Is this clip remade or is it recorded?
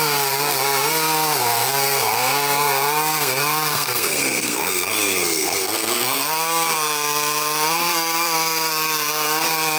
remade